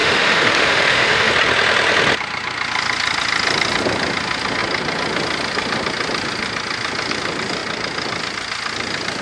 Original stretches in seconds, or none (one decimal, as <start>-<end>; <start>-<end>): 1.3-9.2